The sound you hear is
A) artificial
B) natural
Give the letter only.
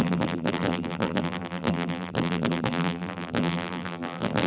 A